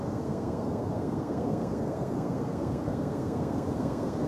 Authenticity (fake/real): fake